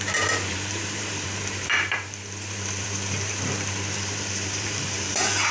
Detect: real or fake fake